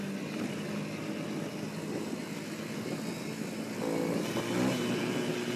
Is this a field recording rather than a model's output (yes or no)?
yes